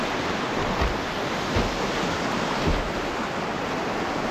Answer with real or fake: real